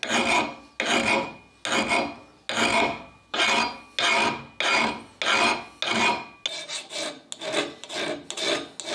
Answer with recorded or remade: recorded